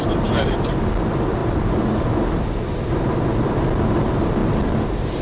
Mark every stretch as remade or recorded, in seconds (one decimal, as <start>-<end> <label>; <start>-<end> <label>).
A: 0.0-5.2 recorded